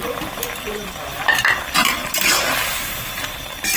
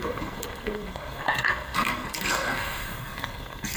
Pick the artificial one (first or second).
second